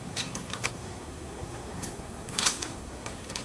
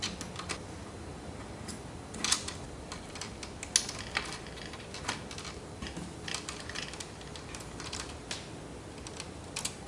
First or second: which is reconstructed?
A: first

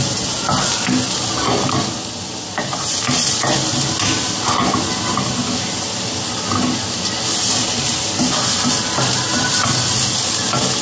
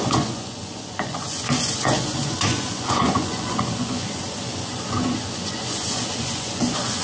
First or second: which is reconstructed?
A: second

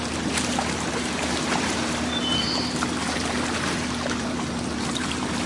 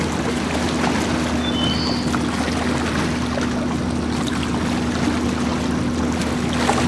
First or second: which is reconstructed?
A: first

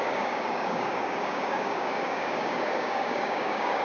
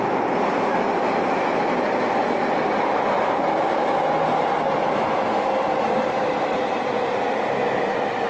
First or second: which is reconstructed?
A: first